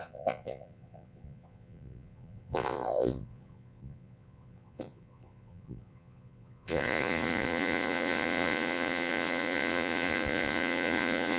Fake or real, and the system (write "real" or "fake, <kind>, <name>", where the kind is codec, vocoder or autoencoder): fake, vocoder, Vocos